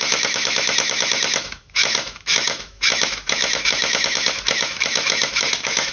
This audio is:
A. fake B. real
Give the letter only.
A